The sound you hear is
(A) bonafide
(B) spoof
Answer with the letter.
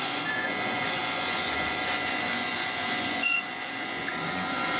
B